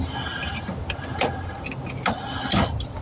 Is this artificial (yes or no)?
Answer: no